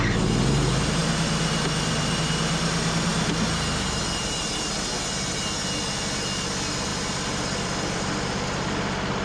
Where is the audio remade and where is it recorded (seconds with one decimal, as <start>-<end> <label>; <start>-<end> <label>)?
0.0-6.9 recorded; 6.9-8.1 remade; 8.1-9.2 recorded